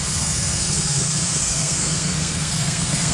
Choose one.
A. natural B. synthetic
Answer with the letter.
B